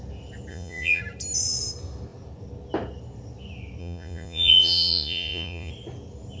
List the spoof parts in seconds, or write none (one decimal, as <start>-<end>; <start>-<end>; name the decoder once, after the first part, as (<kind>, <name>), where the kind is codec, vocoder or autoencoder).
0.5-1.0 (vocoder, Vocos); 3.8-5.7